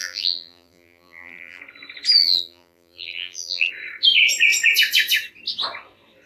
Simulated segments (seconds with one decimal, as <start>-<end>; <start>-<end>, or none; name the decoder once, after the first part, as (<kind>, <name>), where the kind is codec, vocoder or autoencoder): 0.0-1.6 (vocoder, BigVGAN v2); 2.2-3.7